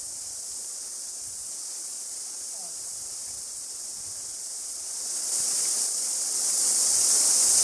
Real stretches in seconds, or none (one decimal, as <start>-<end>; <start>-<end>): 0.0-7.6